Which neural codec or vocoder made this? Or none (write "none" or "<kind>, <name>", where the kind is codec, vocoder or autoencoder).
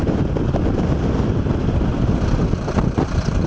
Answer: none